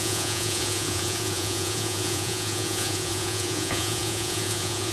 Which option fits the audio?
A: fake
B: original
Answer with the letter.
A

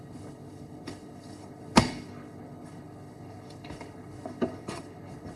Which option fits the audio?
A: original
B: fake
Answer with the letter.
B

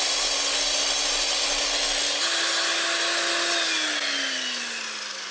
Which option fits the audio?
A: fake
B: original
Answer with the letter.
B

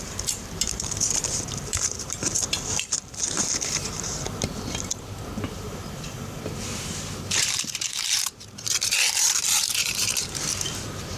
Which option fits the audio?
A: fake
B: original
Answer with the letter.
A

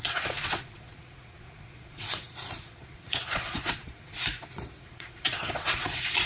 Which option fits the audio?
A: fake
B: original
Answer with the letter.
A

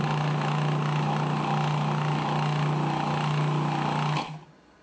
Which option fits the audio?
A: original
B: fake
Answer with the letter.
A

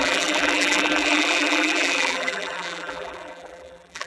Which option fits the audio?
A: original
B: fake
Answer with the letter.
B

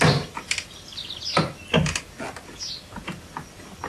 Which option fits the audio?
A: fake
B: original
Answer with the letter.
B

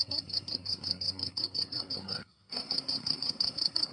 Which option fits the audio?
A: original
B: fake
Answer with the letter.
B